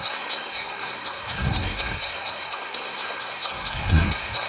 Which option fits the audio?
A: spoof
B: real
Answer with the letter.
A